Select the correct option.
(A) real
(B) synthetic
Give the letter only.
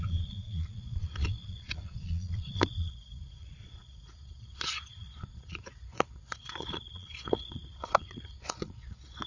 B